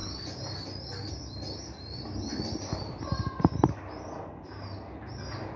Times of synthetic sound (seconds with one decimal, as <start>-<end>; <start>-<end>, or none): none